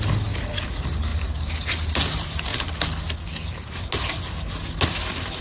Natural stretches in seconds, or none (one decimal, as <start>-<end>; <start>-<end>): 0.0-5.4